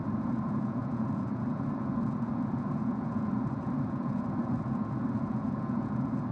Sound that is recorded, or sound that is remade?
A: remade